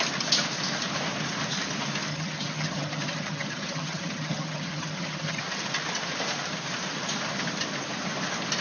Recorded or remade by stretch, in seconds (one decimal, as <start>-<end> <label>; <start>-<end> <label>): 0.0-2.1 recorded; 2.1-5.4 remade; 5.4-8.6 recorded